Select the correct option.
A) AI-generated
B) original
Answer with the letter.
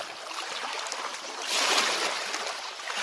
B